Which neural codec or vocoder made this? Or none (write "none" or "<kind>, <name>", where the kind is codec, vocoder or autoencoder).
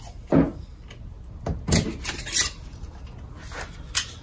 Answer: none